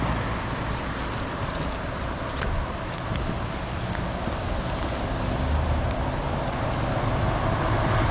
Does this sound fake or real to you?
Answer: real